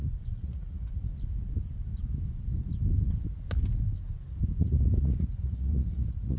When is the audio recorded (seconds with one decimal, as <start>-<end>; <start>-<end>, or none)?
1.1-4.6